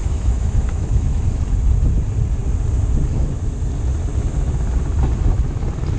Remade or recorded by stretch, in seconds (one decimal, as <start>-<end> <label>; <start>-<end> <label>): 0.0-1.2 remade; 1.2-6.0 recorded